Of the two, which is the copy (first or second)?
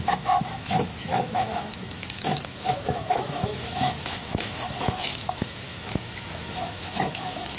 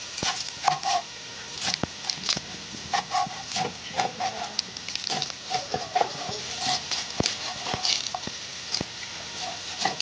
first